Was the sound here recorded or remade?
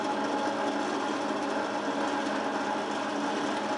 recorded